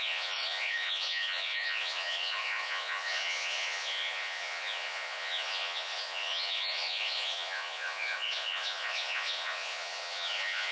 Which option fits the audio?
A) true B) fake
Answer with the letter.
B